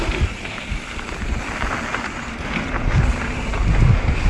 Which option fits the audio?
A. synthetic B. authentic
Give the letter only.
B